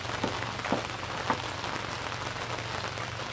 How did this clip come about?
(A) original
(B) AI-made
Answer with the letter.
A